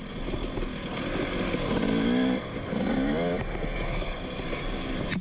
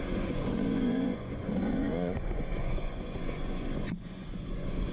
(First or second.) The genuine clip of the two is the first